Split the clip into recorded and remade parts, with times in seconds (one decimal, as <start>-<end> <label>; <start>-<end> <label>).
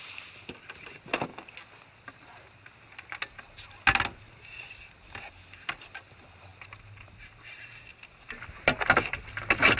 0.0-9.8 recorded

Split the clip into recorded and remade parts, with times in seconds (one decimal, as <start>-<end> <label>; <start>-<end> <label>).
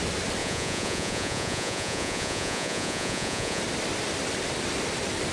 0.0-0.4 recorded; 0.4-3.6 remade; 3.6-5.3 recorded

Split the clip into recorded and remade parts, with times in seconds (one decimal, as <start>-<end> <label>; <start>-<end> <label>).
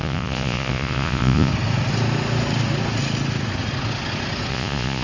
0.0-1.5 remade; 1.5-4.5 recorded; 4.5-5.0 remade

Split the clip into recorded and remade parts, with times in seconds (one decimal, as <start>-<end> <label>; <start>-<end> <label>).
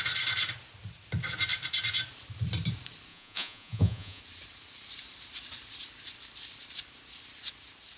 0.0-3.1 recorded; 3.1-4.2 remade; 4.2-8.0 recorded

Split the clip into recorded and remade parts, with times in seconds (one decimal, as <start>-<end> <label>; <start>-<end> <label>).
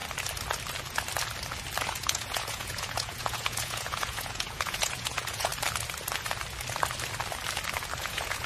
0.0-1.8 recorded; 1.8-5.5 remade; 5.5-8.0 recorded; 8.0-8.5 remade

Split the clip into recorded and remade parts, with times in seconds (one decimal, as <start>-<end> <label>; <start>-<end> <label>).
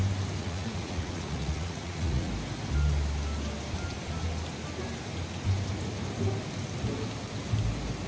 0.0-0.4 recorded; 0.4-2.3 remade; 2.3-8.1 recorded